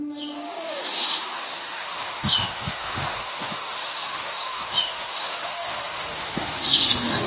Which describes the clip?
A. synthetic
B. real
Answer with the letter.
A